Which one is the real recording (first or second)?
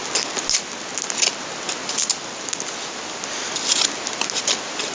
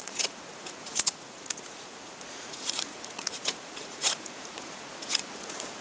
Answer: first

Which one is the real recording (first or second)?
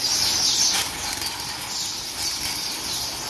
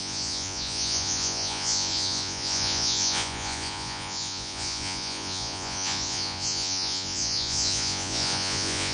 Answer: first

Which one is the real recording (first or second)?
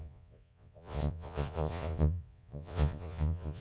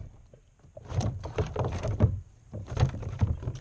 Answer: second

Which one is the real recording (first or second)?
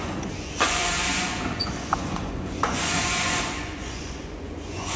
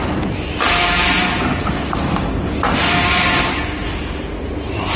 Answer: second